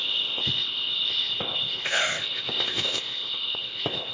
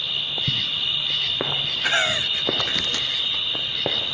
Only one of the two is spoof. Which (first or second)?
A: first